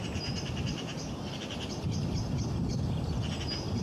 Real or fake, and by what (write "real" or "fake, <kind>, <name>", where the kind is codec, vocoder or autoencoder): real